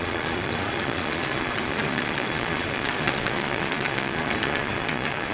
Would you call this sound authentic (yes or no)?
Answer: no